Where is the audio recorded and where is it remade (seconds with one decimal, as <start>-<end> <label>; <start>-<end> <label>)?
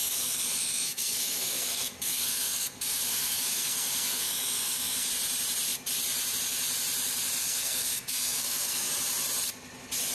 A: 0.0-5.1 remade; 5.1-7.4 recorded; 7.4-8.9 remade; 8.9-10.1 recorded